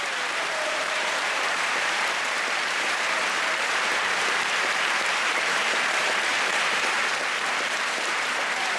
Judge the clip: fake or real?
fake